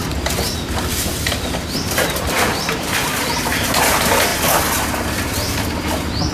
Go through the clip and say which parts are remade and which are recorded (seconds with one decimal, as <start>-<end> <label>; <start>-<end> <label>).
0.0-3.8 remade; 3.8-6.3 recorded